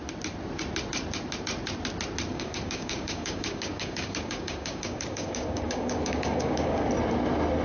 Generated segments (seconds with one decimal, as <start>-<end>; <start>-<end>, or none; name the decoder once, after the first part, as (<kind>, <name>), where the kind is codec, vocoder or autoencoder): 2.3-6.9 (codec, DAC)